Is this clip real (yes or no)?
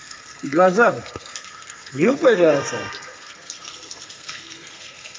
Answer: no